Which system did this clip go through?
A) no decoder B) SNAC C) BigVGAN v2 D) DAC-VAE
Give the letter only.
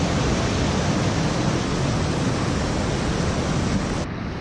A